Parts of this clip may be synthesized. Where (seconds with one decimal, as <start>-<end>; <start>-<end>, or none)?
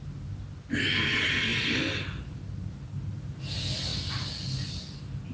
none